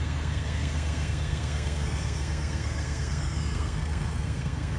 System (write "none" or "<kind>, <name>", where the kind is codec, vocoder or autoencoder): codec, SNAC